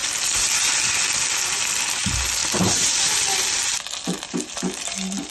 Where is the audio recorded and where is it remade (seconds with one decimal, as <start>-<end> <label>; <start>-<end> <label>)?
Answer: 0.0-5.3 recorded